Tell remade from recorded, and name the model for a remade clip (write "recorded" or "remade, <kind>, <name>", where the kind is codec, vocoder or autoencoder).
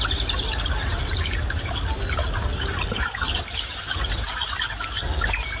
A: recorded